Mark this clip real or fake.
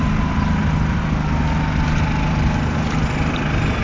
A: real